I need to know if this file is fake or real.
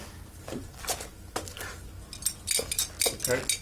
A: real